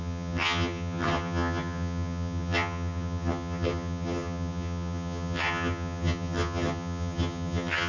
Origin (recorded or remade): remade